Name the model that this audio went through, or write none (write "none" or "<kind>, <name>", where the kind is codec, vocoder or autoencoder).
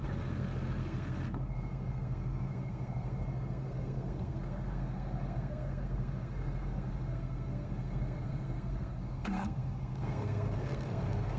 codec, SNAC